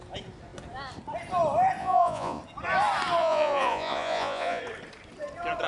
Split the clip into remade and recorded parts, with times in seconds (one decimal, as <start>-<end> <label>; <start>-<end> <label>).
0.0-1.8 recorded; 1.8-2.4 remade; 2.4-3.2 recorded; 3.2-4.6 remade; 4.6-5.7 recorded